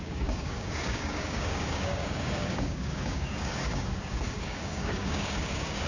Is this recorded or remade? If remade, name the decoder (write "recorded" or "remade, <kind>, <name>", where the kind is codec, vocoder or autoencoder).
remade, codec, DAC